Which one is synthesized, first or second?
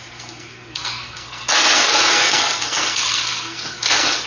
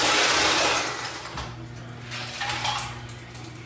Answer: first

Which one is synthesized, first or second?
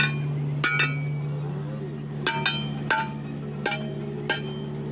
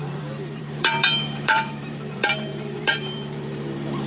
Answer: second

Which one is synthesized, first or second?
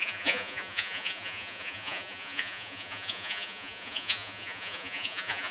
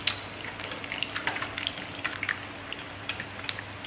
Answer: first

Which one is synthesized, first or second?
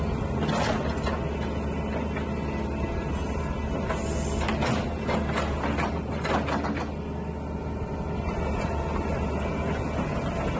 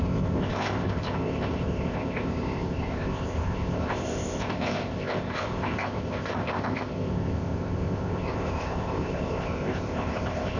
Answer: second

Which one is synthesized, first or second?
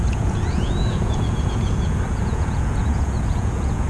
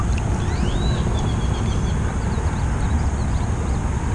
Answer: first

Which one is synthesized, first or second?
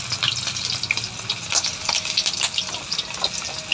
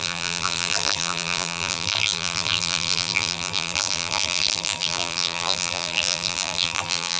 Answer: second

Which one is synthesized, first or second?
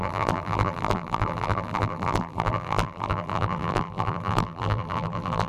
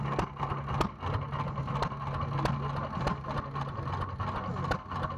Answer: first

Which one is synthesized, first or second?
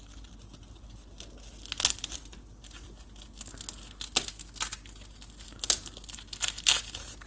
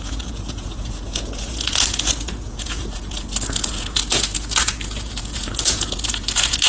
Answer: second